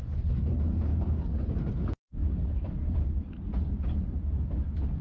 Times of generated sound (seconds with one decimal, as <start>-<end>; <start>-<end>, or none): 2.2-3.3